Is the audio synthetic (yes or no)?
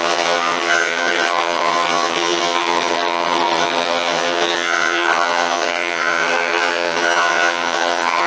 yes